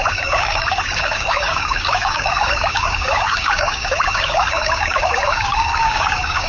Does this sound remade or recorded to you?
remade